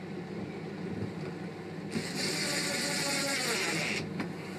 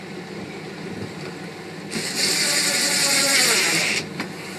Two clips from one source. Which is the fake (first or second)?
second